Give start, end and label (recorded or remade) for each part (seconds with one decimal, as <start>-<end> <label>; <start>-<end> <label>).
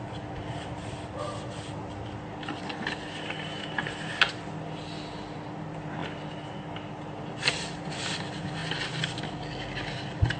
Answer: 0.0-10.4 recorded